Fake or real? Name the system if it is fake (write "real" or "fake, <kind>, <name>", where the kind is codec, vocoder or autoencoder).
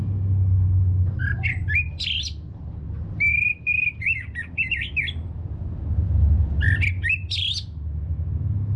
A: real